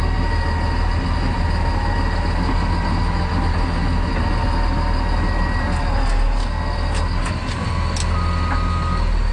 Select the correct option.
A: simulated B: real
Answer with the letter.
B